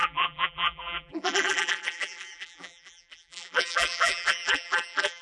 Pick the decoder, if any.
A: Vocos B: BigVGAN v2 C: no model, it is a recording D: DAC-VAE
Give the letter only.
B